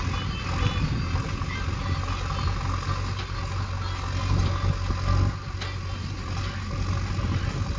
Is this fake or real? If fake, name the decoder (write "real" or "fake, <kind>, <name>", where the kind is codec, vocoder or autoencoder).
real